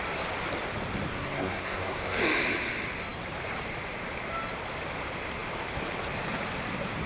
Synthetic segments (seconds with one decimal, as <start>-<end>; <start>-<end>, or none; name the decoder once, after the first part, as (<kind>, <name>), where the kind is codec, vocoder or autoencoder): 1.1-2.2 (codec, SNAC)